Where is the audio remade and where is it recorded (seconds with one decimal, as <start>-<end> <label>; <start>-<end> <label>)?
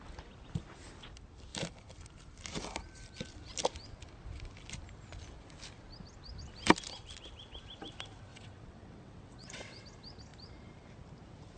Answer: 0.0-8.3 recorded; 8.3-9.8 remade; 9.8-11.6 recorded